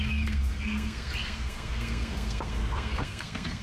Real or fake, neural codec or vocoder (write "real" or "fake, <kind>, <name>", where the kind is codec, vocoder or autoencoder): fake, codec, SNAC